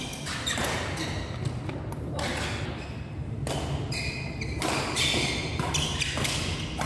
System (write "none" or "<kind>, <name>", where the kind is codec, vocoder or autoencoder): none